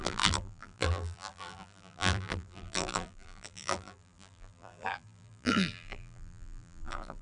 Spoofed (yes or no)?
yes